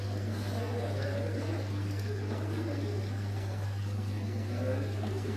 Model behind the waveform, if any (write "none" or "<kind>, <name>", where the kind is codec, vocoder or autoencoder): codec, SNAC